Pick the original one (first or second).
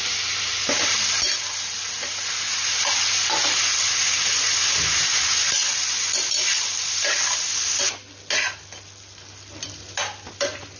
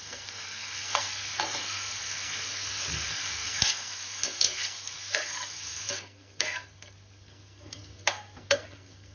first